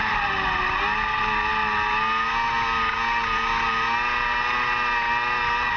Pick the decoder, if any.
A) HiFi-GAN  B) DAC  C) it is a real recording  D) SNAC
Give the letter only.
C